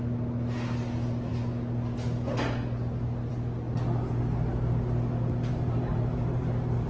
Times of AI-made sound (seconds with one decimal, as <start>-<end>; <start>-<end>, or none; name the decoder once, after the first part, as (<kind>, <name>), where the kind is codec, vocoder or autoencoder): 5.5-6.9 (vocoder, BigVGAN v2)